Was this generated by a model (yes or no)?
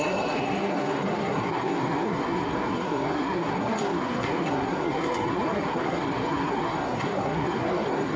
yes